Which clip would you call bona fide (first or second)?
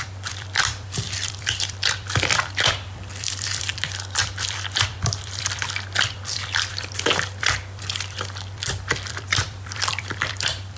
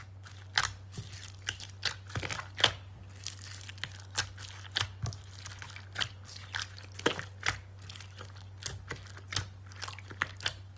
second